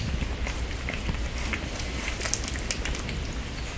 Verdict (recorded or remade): recorded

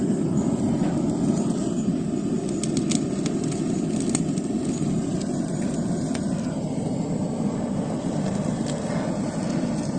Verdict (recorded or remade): recorded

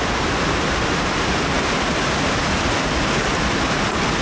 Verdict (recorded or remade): recorded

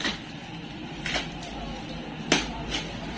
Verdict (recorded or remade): recorded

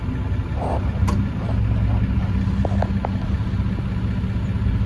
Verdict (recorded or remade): recorded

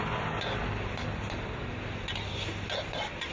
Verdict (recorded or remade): recorded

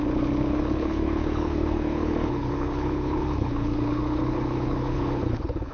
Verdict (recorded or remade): remade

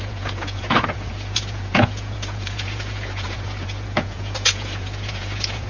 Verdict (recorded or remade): remade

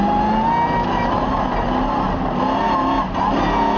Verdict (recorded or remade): recorded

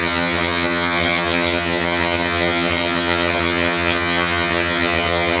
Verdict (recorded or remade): remade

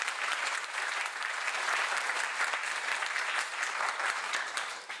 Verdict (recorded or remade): remade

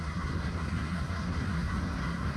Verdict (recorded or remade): remade